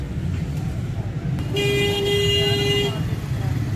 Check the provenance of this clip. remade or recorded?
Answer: recorded